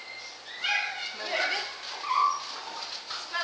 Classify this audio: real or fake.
real